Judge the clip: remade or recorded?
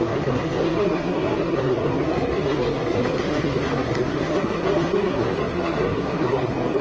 remade